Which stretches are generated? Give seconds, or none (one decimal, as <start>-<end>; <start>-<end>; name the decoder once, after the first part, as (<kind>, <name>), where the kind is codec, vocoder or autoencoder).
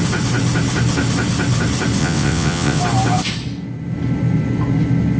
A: 2.0-2.8 (vocoder, WaveNeXt)